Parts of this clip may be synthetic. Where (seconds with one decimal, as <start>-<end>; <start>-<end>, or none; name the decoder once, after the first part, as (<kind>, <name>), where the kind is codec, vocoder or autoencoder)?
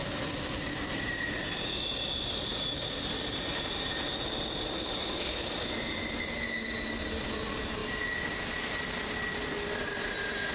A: 0.0-3.9 (vocoder, BigVGAN v2)